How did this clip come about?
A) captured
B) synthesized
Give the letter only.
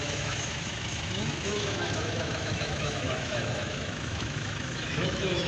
B